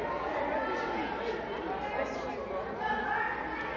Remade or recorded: recorded